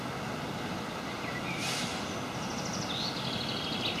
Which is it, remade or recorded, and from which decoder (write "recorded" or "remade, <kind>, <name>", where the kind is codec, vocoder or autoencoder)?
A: recorded